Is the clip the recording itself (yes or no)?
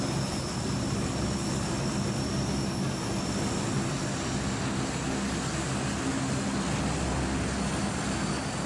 yes